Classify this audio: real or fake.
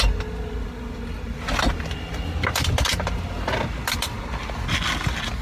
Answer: real